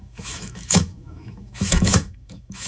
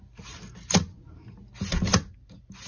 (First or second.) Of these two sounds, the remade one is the first